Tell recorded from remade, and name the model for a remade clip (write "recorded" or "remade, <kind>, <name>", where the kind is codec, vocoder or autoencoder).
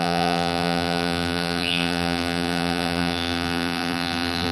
remade, vocoder, BigVGAN v2